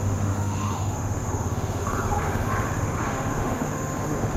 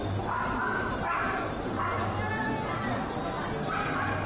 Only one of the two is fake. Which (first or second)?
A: first